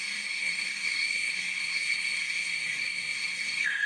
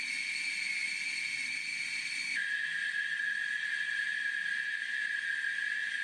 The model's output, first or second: first